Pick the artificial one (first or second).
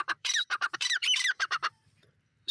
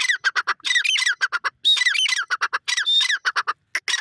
first